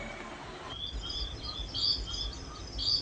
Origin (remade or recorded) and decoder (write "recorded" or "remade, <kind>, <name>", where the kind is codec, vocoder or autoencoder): recorded